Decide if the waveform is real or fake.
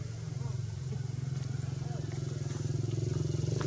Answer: real